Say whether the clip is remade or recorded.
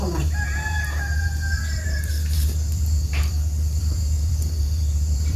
remade